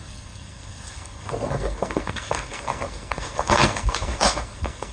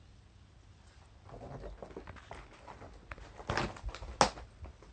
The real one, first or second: second